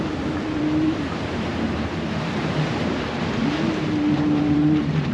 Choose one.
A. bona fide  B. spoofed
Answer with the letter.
B